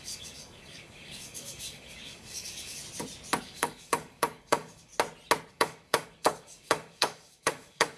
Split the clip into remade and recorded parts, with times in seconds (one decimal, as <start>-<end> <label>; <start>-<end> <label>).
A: 0.0-2.8 remade; 2.8-3.4 recorded; 3.4-4.9 remade; 4.9-5.5 recorded; 5.5-8.0 remade